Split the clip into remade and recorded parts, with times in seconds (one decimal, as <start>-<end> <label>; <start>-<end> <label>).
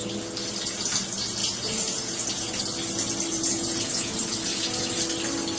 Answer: 0.0-1.4 recorded; 1.4-2.6 remade; 2.6-3.3 recorded; 3.3-5.0 remade; 5.0-5.6 recorded